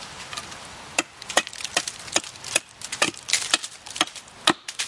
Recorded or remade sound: recorded